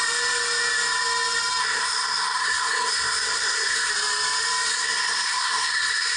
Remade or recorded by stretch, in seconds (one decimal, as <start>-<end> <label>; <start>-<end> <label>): 0.0-1.6 recorded; 1.6-3.9 remade; 3.9-4.7 recorded; 4.7-6.2 remade